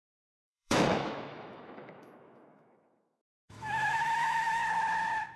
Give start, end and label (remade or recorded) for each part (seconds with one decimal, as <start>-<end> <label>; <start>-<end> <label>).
0.0-4.6 remade; 4.6-5.4 recorded